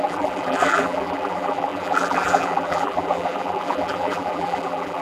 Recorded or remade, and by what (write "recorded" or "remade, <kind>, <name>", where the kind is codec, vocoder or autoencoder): remade, vocoder, BigVGAN v2